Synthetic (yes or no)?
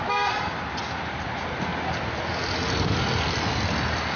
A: no